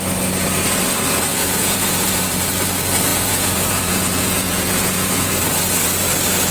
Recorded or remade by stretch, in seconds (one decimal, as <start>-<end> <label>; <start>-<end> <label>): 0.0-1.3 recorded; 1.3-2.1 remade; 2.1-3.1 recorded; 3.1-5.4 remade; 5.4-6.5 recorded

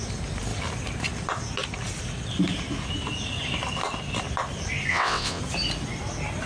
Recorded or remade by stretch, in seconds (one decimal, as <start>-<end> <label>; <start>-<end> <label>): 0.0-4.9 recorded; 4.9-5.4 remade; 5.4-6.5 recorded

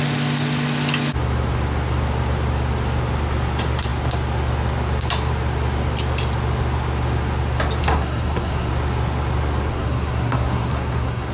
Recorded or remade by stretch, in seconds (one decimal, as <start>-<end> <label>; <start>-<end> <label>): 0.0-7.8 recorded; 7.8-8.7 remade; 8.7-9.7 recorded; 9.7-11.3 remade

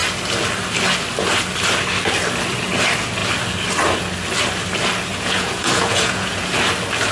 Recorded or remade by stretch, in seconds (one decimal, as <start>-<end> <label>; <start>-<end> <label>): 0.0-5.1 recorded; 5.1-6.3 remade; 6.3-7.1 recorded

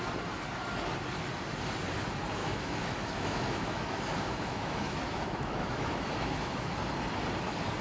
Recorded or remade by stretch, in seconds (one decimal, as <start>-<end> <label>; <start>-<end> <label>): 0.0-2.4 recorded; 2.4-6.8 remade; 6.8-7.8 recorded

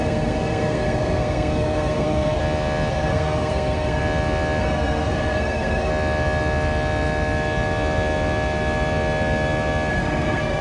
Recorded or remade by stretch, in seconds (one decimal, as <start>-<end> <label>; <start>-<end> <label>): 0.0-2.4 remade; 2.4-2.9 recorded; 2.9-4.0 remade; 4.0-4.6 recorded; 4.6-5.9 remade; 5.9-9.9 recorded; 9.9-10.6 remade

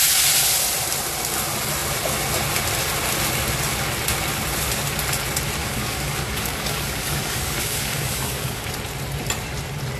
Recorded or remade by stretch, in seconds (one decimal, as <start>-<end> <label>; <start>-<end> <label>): 0.0-5.6 recorded; 5.6-8.7 remade; 8.7-10.0 recorded

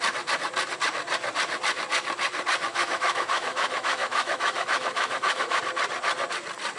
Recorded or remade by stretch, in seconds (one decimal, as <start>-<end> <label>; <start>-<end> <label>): 0.0-2.7 recorded; 2.7-5.6 remade; 5.6-6.8 recorded